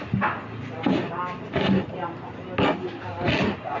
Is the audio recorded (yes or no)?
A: yes